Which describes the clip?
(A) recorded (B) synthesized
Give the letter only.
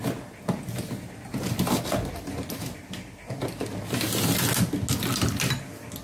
A